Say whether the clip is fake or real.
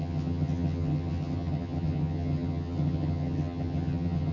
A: fake